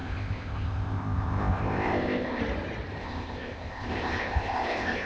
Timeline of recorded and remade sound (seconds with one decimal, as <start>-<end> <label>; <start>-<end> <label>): 0.0-2.4 remade; 2.4-3.0 recorded; 3.0-5.1 remade